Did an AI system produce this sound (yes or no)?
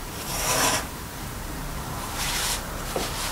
yes